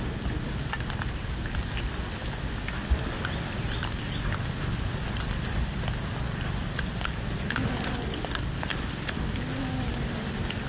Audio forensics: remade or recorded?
recorded